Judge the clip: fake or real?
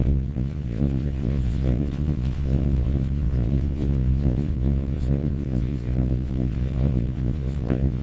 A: fake